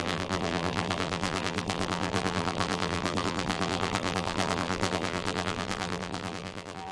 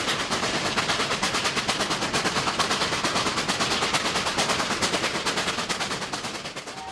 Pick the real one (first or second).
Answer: second